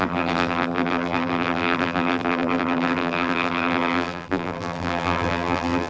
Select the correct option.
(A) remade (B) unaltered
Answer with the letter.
A